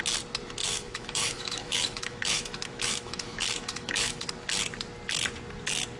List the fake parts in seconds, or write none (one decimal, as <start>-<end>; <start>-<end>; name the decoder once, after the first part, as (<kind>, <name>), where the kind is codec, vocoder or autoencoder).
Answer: 0.6-4.2 (autoencoder, DAC-VAE)